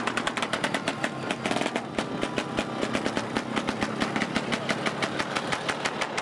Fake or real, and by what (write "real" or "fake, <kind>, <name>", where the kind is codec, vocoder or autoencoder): real